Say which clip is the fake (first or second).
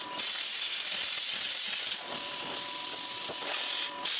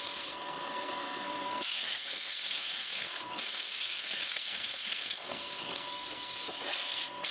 second